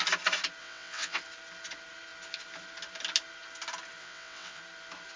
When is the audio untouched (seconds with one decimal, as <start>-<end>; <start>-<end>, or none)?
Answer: 0.0-0.6; 1.2-4.0; 4.6-5.2